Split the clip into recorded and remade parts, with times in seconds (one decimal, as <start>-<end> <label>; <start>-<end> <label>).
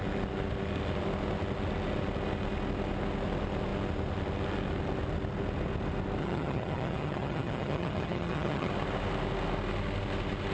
0.0-6.2 recorded; 6.2-8.7 remade; 8.7-10.5 recorded